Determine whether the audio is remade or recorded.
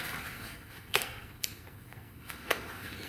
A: remade